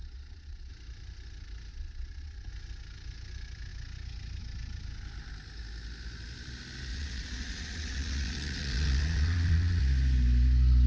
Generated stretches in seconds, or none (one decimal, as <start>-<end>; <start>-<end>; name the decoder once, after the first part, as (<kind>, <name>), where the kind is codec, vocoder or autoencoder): 0.0-0.7 (vocoder, Vocos); 1.7-2.5; 6.9-9.8